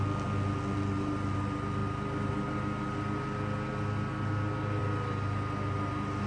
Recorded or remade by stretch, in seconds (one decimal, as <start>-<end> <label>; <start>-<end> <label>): 0.0-6.3 recorded